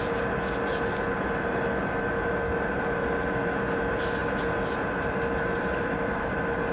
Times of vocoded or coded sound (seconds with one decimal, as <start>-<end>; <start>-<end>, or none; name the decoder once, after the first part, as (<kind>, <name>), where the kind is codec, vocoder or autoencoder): none